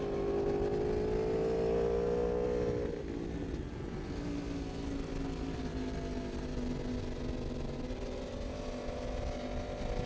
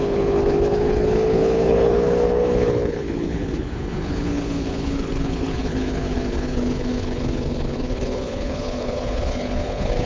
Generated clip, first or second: second